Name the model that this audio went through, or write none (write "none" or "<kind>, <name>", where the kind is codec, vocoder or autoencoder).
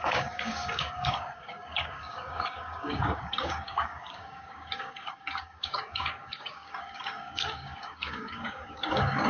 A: codec, DAC